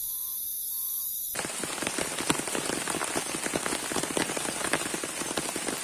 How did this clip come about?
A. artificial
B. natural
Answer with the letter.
B